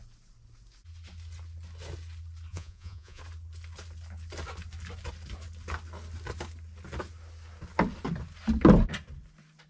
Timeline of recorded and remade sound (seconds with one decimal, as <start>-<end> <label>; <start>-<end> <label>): 0.0-2.5 recorded; 2.5-3.2 remade; 3.2-9.7 recorded